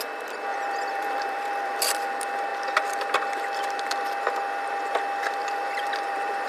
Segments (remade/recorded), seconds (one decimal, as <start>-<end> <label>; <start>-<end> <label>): 0.0-0.5 recorded; 0.5-2.1 remade; 2.1-5.4 recorded; 5.4-6.5 remade